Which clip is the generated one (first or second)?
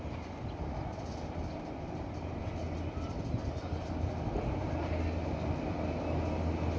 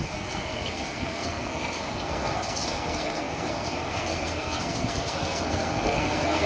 second